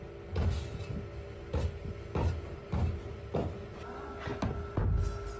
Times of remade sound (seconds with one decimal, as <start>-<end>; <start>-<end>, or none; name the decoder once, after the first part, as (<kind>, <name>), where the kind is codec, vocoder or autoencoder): none